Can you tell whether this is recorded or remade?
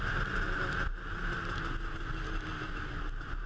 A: recorded